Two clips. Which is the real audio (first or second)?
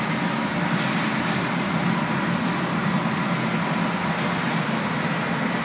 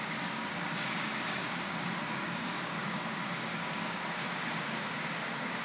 first